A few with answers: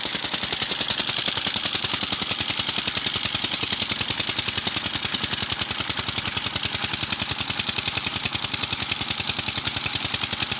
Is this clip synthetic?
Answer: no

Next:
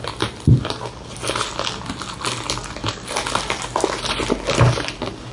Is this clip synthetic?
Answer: no